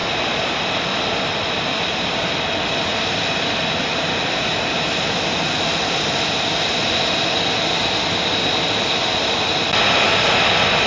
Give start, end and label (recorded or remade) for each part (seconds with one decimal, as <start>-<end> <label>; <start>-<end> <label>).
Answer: 0.0-2.9 recorded; 2.9-3.6 remade; 3.6-10.9 recorded